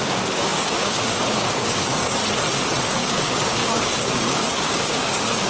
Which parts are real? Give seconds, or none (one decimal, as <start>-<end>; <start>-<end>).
2.2-2.8